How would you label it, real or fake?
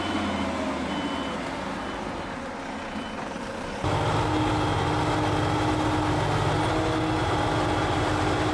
real